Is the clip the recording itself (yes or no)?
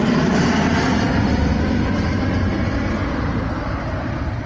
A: yes